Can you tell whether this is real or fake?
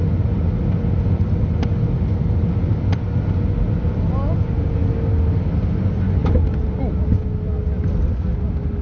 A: real